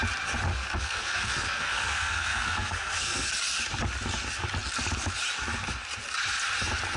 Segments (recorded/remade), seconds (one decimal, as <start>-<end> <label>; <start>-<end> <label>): 0.0-0.5 recorded; 0.5-3.3 remade; 3.3-7.0 recorded